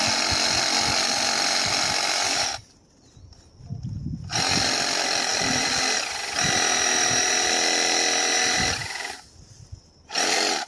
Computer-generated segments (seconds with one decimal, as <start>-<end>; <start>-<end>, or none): none